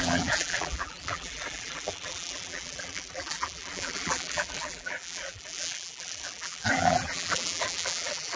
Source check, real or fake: fake